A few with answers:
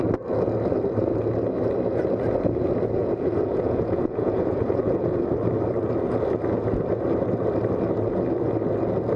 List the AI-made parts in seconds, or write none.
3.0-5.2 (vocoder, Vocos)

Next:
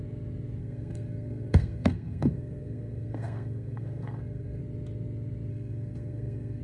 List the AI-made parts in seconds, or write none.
0.6-4.6 (codec, SNAC); 5.5-6.6

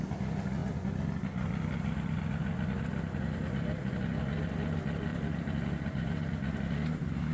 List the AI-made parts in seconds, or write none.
none

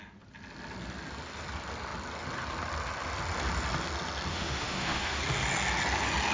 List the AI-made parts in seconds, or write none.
4.3-5.2 (autoencoder, DAC-VAE)

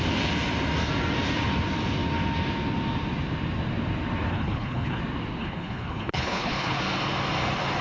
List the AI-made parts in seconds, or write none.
4.3-5.0 (codec, HILCodec); 5.4-6.8